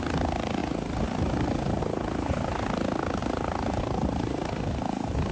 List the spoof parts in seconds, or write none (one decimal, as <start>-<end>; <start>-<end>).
none